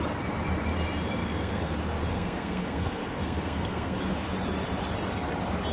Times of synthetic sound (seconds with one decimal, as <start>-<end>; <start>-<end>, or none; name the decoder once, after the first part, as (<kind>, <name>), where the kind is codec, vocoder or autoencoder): 1.2-1.7 (codec, SNAC); 2.1-4.0